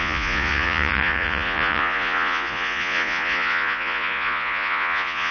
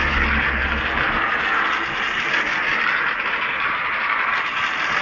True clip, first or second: second